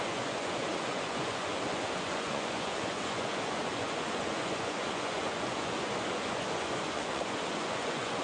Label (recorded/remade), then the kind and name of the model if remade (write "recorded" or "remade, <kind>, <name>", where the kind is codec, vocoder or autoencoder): remade, vocoder, Vocos